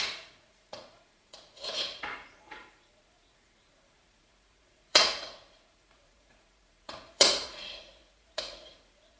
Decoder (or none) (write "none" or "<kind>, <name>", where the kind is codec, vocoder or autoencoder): vocoder, Vocos